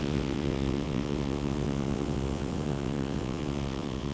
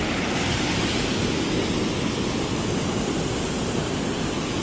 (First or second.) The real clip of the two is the second